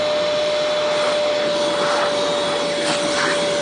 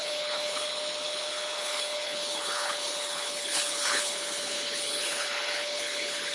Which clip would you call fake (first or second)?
second